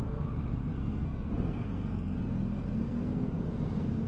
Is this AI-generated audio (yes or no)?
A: yes